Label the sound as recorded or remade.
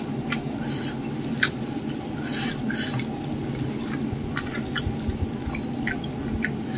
recorded